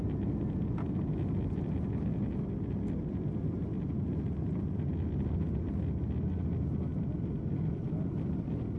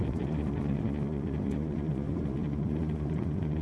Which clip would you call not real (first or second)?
second